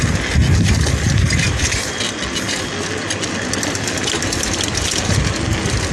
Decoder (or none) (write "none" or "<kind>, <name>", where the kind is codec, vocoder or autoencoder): none